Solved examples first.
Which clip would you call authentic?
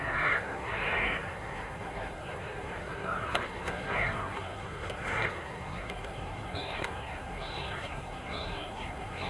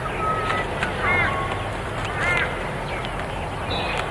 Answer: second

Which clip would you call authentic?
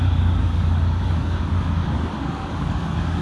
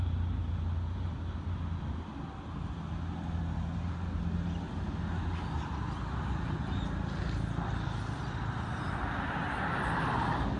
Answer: second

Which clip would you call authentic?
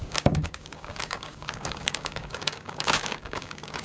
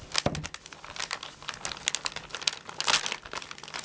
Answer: second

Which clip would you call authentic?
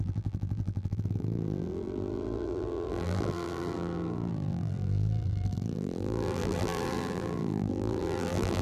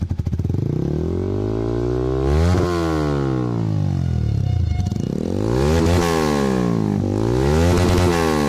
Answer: second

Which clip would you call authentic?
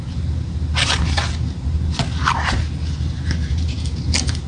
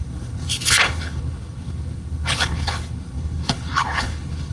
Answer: first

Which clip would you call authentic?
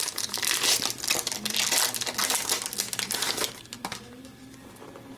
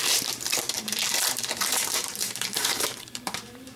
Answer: first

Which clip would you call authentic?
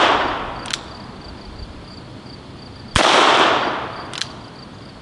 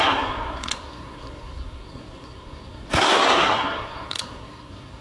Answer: first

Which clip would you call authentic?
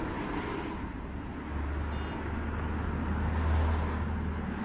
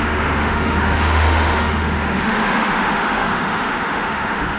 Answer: first